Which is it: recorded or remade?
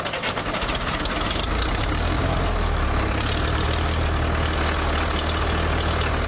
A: recorded